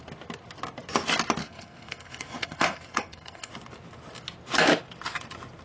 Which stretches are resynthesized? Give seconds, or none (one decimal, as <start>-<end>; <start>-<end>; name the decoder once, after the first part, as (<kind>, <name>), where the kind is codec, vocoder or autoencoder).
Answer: 1.4-3.5 (codec, SNAC)